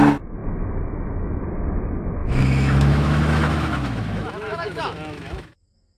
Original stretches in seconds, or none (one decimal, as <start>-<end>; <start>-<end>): 0.0-0.4; 1.4-2.2